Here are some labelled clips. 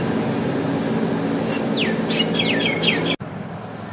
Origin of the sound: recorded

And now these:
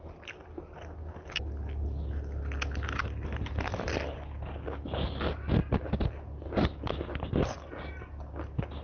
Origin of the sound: recorded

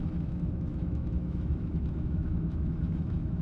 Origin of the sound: remade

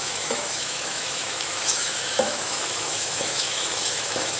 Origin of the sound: remade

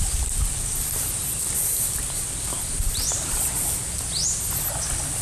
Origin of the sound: recorded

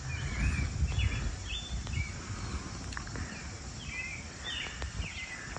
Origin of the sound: recorded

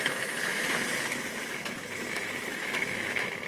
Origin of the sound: remade